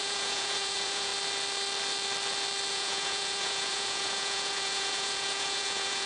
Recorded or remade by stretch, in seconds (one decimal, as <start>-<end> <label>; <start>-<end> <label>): 0.0-1.1 remade; 1.1-2.7 recorded; 2.7-6.1 remade